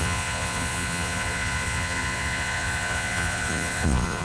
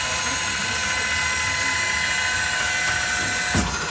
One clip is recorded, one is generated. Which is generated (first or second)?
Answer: first